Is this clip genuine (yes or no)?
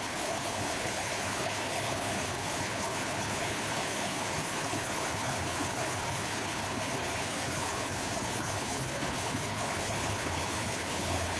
no